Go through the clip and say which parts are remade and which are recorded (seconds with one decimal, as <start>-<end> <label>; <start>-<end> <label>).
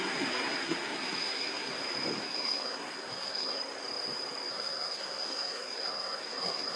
0.0-1.7 remade; 1.7-2.2 recorded; 2.2-3.6 remade; 3.6-4.5 recorded; 4.5-6.8 remade